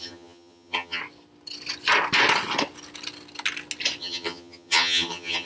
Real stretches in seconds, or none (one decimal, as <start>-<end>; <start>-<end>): 1.0-4.0